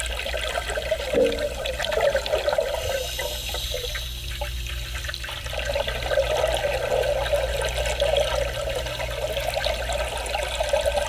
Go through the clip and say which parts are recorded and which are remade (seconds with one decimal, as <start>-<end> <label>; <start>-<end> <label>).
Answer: 0.0-11.1 recorded

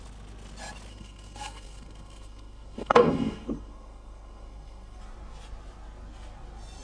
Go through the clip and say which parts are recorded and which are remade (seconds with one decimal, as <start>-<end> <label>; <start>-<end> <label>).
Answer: 0.0-0.9 recorded; 0.9-5.0 remade; 5.0-6.8 recorded